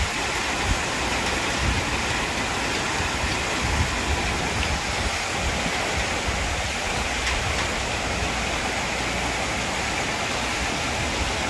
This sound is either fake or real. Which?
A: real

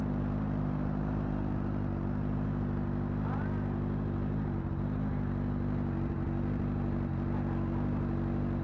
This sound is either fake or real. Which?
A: real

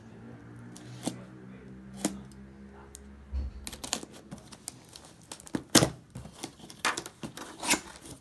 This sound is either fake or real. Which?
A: real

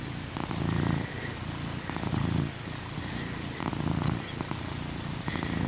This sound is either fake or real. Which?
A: real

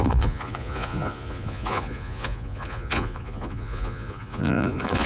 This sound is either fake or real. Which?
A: fake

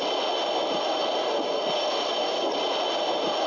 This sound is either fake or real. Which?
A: real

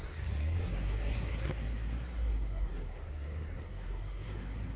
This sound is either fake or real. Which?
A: fake